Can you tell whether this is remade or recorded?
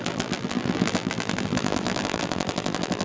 remade